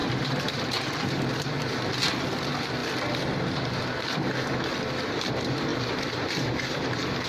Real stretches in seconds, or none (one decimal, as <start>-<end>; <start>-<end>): 1.3-5.7